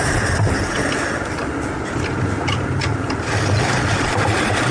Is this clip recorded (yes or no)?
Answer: yes